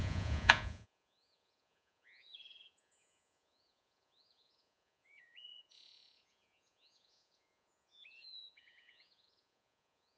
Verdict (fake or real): fake